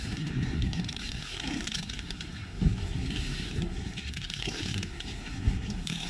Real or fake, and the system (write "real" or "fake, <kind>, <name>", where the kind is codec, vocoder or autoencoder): fake, codec, SNAC